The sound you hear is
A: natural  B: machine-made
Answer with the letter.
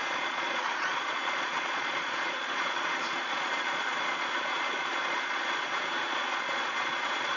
B